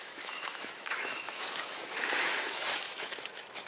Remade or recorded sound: remade